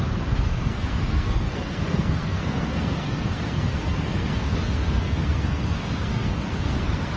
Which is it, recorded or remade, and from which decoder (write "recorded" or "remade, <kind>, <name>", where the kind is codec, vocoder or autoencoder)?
remade, codec, SNAC